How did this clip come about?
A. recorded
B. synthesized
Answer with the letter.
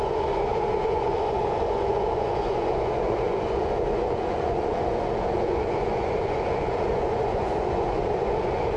B